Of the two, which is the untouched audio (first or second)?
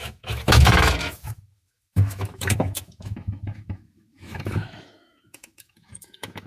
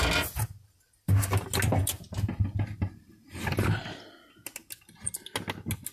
second